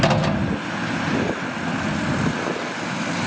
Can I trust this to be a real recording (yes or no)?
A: yes